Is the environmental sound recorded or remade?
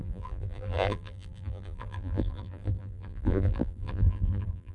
remade